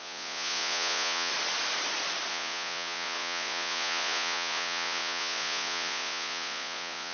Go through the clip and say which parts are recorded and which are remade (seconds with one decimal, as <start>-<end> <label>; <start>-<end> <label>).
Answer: 0.0-1.3 remade; 1.3-2.3 recorded; 2.3-7.1 remade